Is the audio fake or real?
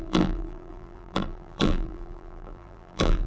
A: fake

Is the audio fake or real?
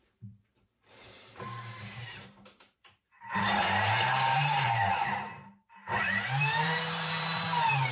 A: fake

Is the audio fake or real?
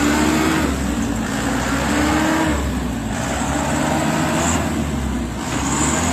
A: real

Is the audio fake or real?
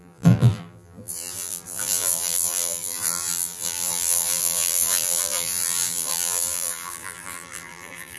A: fake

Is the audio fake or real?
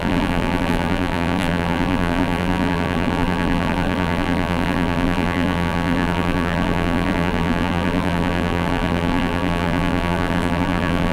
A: fake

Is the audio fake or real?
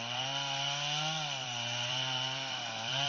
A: fake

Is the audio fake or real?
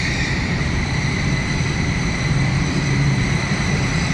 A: fake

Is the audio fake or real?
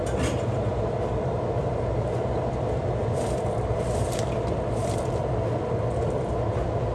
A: fake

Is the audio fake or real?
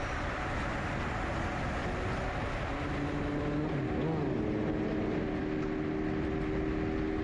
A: real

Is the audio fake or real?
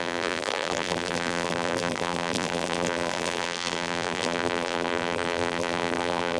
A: fake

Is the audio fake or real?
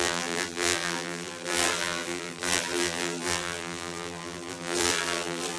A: fake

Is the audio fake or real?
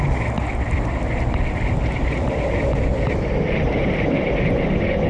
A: real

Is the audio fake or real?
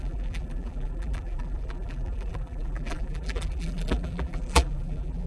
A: fake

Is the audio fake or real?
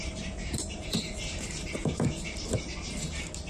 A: fake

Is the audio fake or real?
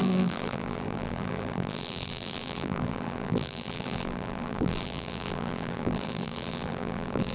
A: fake